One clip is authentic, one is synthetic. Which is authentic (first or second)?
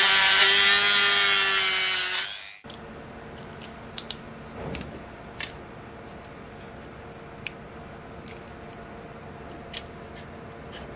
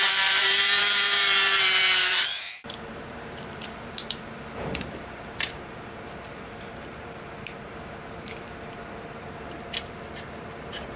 first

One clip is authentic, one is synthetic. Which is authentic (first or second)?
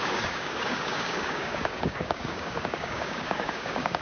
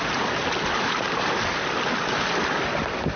second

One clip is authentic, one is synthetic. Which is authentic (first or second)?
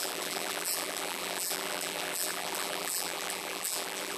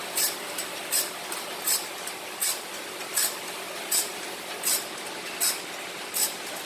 second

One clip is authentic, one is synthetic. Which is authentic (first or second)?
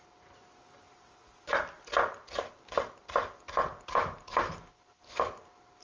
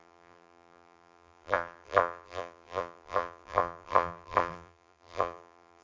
first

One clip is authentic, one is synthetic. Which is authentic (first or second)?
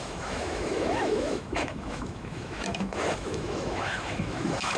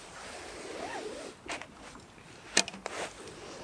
second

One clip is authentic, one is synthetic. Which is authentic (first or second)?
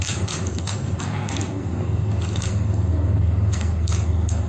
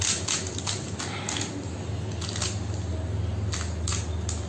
second